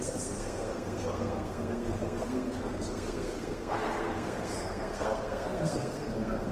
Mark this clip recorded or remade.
remade